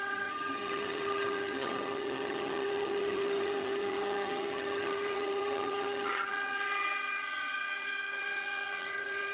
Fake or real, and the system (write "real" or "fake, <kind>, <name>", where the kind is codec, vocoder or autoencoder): fake, vocoder, HiFi-GAN